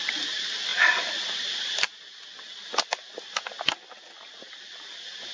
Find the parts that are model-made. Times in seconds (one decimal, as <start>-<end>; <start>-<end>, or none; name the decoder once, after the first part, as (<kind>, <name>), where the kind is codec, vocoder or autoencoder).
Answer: none